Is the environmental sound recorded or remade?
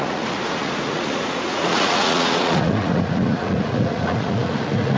remade